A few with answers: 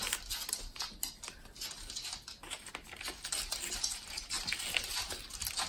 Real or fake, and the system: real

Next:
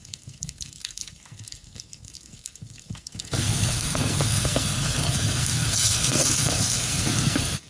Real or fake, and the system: fake, codec, SNAC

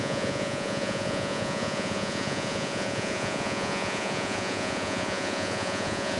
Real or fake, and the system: fake, vocoder, Vocos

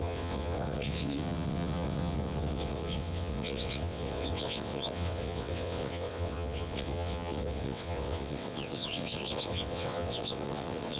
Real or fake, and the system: fake, vocoder, WaveNeXt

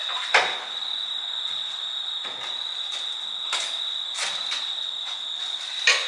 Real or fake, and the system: real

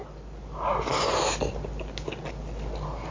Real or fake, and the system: real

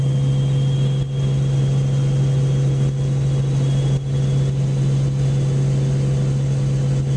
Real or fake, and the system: real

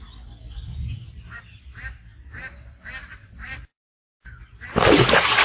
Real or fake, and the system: real